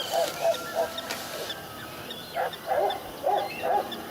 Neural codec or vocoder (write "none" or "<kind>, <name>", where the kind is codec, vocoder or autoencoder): vocoder, BigVGAN v2